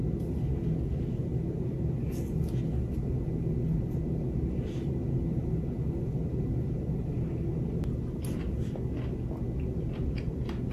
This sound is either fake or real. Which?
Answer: real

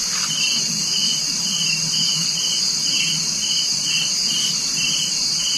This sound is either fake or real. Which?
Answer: real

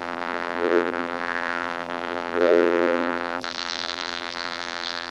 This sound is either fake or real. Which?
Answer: fake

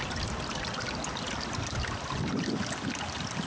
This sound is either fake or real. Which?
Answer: real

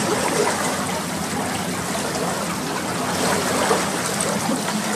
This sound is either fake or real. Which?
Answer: real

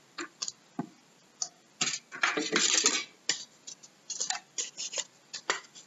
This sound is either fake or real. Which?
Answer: real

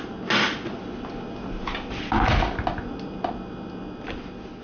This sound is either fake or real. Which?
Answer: real